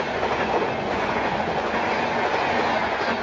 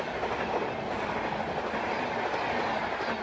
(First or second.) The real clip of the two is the second